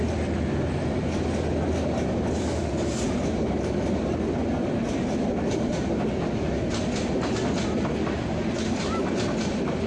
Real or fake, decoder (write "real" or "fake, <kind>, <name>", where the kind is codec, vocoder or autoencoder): real